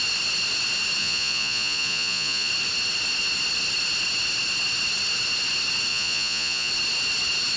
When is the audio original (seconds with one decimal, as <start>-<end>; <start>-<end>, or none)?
0.0-1.0; 2.5-5.9; 6.7-7.6

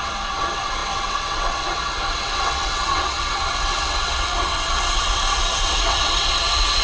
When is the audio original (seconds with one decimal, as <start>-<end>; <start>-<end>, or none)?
none

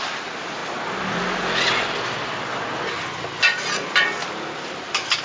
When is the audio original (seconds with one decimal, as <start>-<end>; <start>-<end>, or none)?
0.6-3.7